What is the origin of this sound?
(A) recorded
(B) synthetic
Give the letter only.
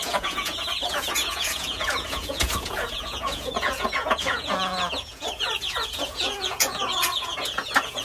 B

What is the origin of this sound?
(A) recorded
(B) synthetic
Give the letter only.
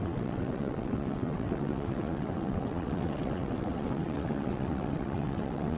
B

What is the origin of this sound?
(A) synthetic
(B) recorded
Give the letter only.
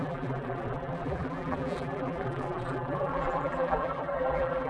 A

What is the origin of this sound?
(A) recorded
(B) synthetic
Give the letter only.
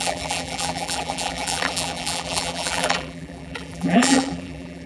B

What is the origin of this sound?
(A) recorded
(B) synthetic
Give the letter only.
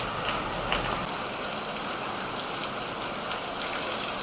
A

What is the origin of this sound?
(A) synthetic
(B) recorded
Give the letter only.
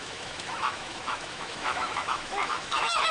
A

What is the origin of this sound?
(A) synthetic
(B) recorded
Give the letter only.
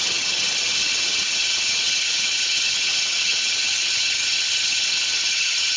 A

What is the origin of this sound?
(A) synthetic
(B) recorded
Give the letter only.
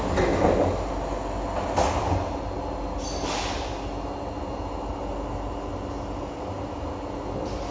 B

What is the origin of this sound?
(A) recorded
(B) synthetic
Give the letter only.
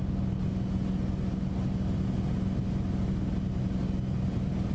A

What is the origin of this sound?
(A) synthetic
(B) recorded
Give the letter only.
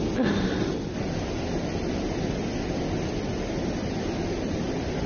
B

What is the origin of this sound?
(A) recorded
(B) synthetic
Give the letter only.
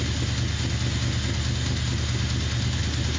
A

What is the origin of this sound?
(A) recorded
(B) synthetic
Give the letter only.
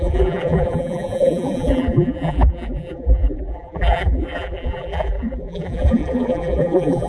B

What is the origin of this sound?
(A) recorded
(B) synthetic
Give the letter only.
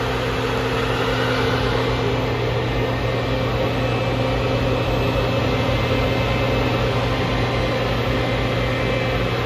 A